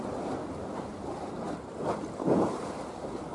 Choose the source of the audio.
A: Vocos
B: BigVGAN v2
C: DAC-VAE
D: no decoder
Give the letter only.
D